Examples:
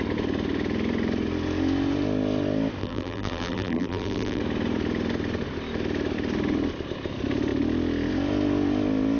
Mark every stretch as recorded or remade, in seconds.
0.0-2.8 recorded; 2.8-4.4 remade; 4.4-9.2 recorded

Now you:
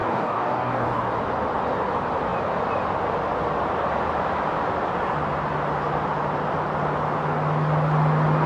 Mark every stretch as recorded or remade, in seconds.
0.0-1.0 remade; 1.0-8.5 recorded

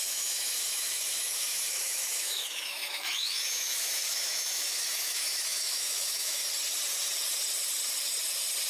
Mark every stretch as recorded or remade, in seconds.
0.0-6.4 remade; 6.4-8.7 recorded

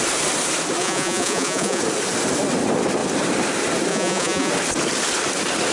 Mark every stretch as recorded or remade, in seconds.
0.0-0.8 recorded; 0.8-1.8 remade; 1.8-3.9 recorded; 3.9-4.5 remade; 4.5-5.7 recorded